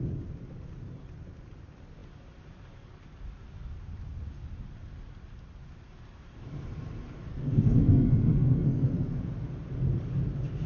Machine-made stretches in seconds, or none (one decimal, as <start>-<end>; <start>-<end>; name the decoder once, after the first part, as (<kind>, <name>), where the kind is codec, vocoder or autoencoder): 7.3-9.2 (codec, SNAC)